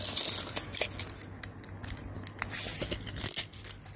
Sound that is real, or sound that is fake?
real